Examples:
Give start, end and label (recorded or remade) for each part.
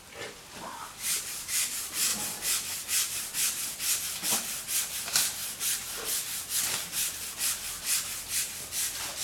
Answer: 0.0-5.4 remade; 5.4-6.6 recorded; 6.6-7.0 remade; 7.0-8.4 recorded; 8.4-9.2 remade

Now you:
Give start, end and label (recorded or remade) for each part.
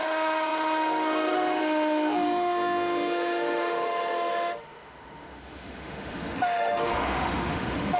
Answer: 0.0-8.0 remade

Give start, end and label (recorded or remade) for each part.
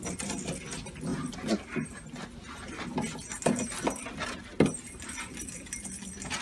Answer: 0.0-6.4 recorded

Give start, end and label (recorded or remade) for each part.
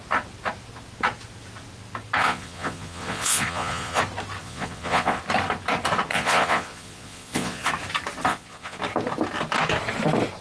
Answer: 0.0-2.2 recorded; 2.2-4.0 remade; 4.0-4.4 recorded; 4.4-5.2 remade; 5.2-6.1 recorded; 6.1-7.7 remade; 7.7-8.3 recorded; 8.3-8.8 remade; 8.8-10.4 recorded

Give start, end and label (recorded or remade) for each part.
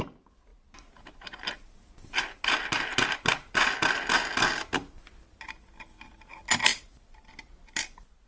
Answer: 0.0-6.7 recorded; 6.7-7.3 remade; 7.3-8.3 recorded